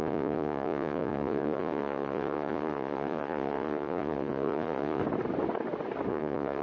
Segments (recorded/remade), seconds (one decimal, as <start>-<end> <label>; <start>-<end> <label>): 0.0-5.0 remade; 5.0-6.1 recorded; 6.1-6.6 remade